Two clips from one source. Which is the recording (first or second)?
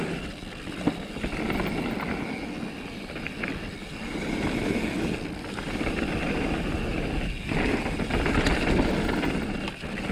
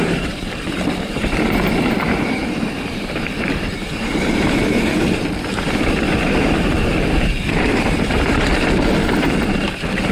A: first